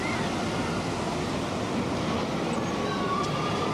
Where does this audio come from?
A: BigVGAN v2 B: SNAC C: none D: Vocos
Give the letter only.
C